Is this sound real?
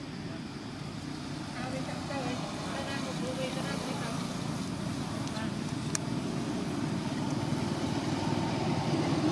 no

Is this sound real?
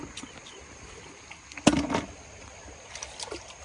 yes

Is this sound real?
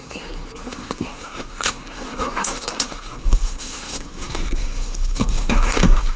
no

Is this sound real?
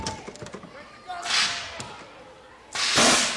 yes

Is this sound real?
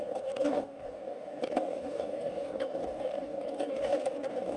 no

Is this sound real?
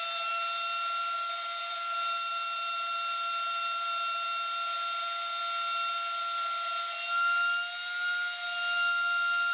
yes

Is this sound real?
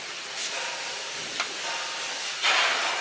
yes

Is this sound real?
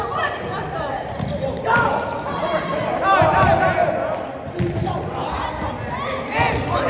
yes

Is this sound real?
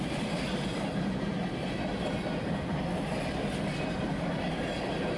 yes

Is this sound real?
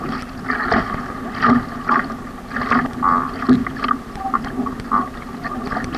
yes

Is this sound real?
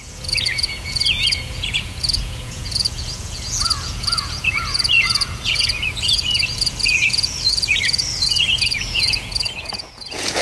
no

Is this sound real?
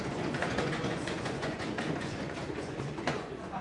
no